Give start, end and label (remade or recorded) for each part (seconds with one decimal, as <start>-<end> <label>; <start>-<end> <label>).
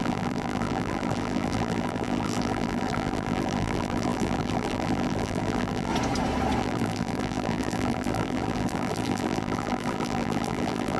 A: 0.0-5.9 remade; 5.9-6.6 recorded; 6.6-11.0 remade